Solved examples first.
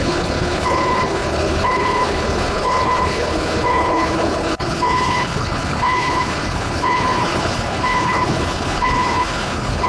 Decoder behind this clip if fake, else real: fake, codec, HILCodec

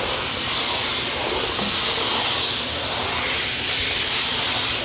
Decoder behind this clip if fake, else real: real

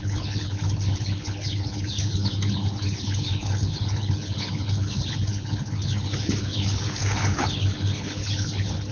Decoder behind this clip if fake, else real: fake, codec, HILCodec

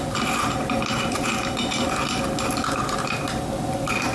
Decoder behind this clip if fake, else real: real